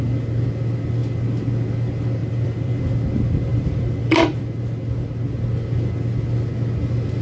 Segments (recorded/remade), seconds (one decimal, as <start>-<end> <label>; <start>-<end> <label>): 0.0-2.2 recorded; 2.2-2.8 remade; 2.8-3.5 recorded; 3.5-4.4 remade; 4.4-7.2 recorded

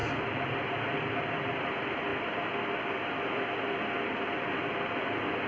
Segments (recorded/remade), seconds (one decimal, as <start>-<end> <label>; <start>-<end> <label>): 0.0-2.1 remade; 2.1-5.5 recorded

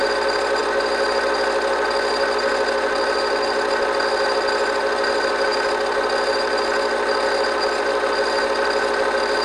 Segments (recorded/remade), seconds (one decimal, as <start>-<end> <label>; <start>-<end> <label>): 0.0-9.4 recorded

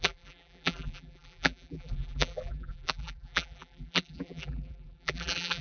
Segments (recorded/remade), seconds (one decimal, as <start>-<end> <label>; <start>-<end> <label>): 0.0-5.6 remade

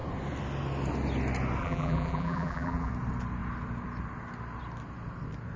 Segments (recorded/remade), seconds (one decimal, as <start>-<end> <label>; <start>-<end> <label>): 0.0-1.6 recorded; 1.6-2.9 remade; 2.9-5.6 recorded